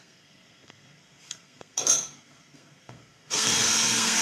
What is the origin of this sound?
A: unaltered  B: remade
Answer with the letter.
B